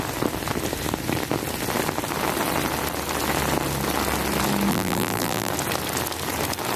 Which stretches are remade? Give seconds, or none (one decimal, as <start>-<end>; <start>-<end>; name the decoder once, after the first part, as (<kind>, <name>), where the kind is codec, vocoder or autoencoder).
4.7-5.5 (vocoder, BigVGAN v2)